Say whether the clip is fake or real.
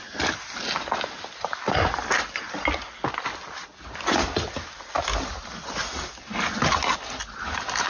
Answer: real